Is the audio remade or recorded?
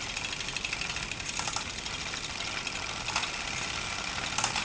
recorded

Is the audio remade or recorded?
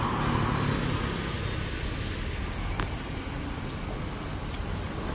recorded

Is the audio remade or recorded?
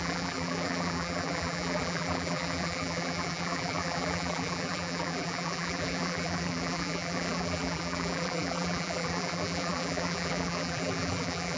remade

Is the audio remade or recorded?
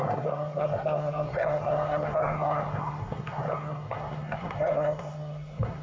remade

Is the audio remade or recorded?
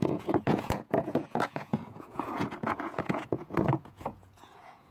remade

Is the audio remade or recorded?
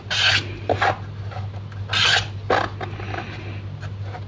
recorded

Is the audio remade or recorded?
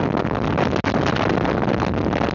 recorded